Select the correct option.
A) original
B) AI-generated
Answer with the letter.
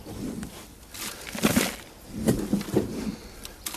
A